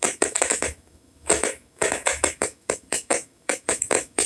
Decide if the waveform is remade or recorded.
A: remade